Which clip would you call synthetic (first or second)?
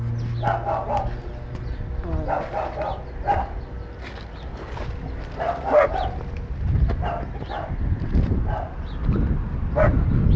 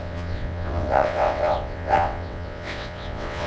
second